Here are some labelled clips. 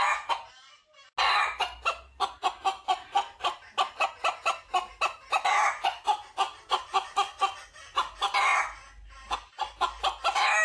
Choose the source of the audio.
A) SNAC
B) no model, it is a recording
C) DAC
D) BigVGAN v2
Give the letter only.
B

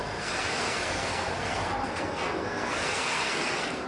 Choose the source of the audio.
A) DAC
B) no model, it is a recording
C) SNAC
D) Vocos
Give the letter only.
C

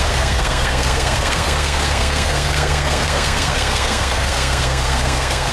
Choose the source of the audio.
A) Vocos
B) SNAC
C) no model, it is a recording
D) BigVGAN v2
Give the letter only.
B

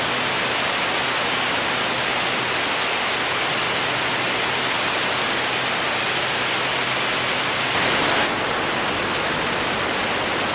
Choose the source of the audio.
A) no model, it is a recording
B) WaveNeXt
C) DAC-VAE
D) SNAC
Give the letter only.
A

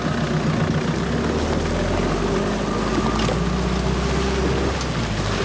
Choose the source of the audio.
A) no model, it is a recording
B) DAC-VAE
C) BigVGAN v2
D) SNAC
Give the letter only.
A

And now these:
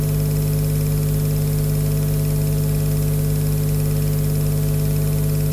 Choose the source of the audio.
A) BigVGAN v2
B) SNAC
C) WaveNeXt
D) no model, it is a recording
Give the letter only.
D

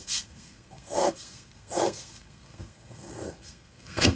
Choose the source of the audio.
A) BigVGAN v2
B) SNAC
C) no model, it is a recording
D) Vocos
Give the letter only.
B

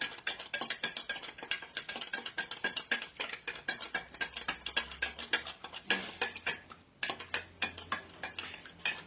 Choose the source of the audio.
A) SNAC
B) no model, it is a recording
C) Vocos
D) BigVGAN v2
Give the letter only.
B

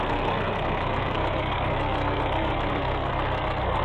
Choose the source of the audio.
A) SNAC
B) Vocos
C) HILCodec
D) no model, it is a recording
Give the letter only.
A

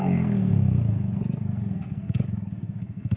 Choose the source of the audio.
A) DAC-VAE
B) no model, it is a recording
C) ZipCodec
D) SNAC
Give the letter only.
D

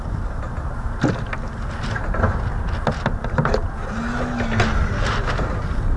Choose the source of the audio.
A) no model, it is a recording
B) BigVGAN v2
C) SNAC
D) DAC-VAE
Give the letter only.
A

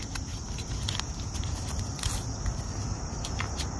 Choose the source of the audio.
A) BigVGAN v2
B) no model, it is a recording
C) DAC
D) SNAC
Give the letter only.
B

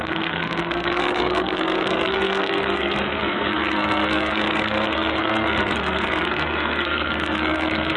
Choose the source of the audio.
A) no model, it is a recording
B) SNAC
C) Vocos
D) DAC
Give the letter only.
B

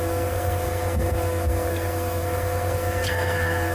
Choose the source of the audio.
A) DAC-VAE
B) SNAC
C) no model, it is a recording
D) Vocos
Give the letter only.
B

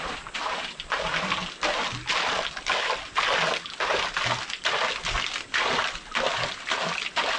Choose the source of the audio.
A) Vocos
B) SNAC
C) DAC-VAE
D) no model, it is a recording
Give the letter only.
D